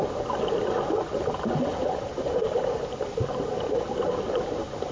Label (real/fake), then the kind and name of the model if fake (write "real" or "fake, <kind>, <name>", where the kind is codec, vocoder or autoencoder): real